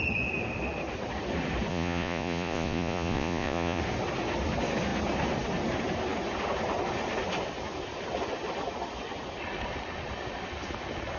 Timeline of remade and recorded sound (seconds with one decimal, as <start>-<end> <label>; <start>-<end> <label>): 0.0-1.7 recorded; 1.7-3.8 remade; 3.8-11.2 recorded

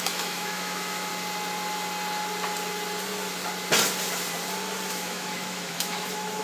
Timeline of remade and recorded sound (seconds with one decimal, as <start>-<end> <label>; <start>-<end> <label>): 0.0-1.1 remade; 1.1-4.9 recorded; 4.9-6.4 remade

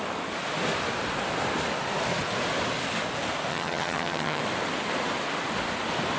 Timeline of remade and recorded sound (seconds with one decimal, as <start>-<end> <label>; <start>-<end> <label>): 0.0-3.5 recorded; 3.5-4.4 remade; 4.4-6.2 recorded

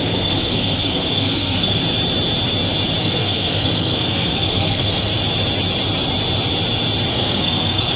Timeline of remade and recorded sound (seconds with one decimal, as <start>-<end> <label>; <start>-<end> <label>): 0.0-1.8 remade; 1.8-3.0 recorded; 3.0-5.1 remade; 5.1-7.1 recorded; 7.1-8.0 remade

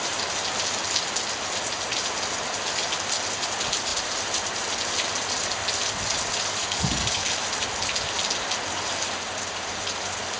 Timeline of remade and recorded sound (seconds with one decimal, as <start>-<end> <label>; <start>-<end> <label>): 0.0-6.6 recorded; 6.6-7.3 remade; 7.3-10.4 recorded

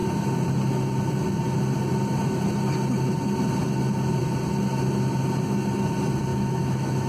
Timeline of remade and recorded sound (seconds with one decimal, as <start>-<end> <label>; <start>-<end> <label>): 0.0-6.3 recorded; 6.3-7.1 remade